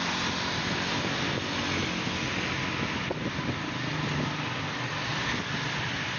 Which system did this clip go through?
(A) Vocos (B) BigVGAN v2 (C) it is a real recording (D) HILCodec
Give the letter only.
C